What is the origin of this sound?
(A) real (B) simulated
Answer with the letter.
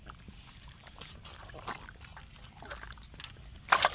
A